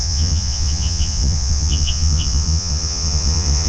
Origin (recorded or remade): remade